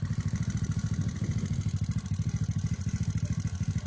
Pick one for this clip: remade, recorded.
recorded